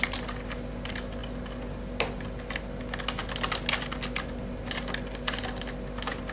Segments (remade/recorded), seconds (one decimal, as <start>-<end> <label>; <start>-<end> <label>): 0.0-6.3 recorded